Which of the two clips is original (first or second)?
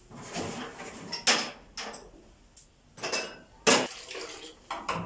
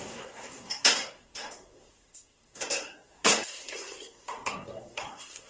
first